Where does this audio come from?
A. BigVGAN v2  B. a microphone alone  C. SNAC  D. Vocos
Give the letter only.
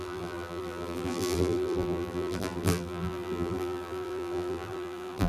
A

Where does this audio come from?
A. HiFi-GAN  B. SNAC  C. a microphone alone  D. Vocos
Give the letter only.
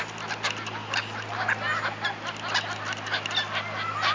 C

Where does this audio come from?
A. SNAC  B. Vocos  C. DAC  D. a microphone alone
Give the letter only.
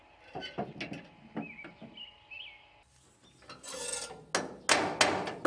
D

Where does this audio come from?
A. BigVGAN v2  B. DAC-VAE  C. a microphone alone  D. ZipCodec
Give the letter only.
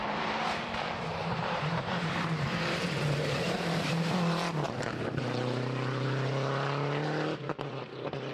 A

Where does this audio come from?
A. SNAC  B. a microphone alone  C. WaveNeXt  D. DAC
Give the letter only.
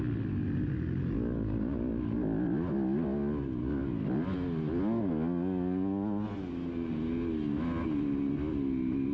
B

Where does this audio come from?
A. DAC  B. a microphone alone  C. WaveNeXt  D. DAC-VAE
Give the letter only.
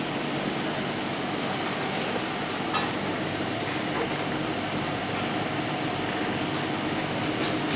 B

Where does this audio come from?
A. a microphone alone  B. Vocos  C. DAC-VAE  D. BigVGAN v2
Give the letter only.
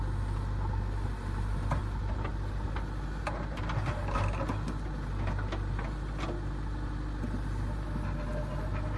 A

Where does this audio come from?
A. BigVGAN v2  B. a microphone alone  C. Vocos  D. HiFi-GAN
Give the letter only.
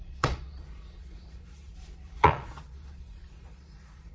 C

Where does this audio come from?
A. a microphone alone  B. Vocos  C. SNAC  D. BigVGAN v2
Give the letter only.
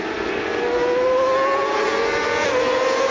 A